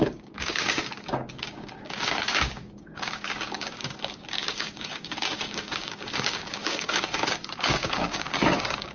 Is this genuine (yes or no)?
no